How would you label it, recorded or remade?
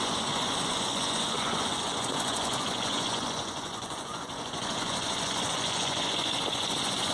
remade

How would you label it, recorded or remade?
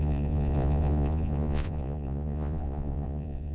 remade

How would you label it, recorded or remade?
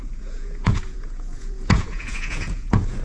remade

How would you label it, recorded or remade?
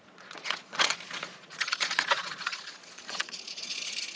remade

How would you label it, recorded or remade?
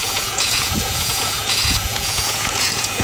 remade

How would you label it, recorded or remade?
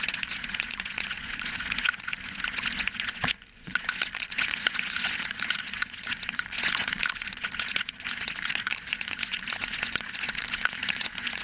remade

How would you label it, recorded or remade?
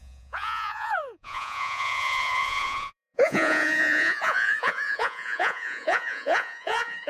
remade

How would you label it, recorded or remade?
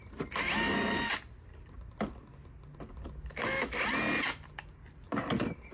recorded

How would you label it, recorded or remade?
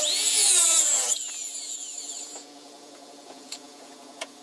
remade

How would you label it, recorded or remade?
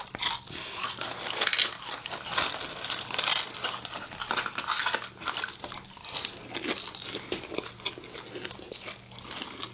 recorded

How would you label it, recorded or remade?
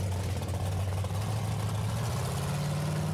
recorded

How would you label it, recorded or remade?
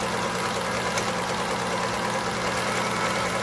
recorded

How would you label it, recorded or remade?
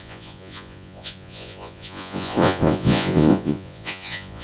remade